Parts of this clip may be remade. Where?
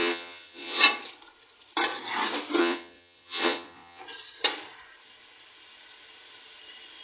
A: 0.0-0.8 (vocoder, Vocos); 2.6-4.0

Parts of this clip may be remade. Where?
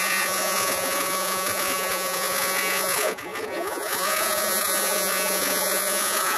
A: 0.0-6.4 (vocoder, Vocos)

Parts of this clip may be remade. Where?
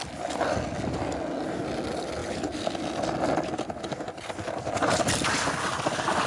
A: none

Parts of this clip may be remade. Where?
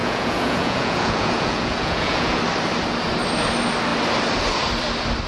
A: 0.0-2.4 (vocoder, Vocos)